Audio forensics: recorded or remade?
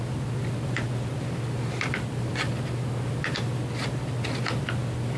recorded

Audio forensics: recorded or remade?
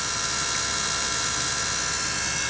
recorded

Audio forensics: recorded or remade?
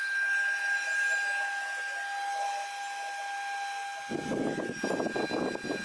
recorded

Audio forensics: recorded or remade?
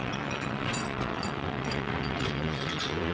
remade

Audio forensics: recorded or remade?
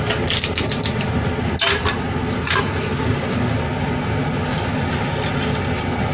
recorded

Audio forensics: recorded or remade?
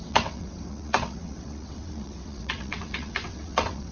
remade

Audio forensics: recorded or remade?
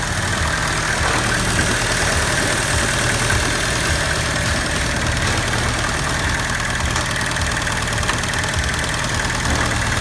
recorded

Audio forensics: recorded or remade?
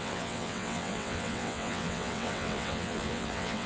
remade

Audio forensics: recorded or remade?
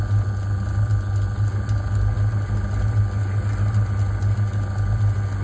recorded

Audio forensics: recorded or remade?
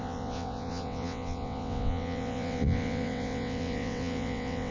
remade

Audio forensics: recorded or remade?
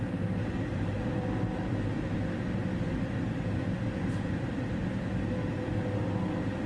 recorded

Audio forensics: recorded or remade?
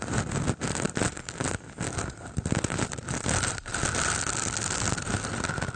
recorded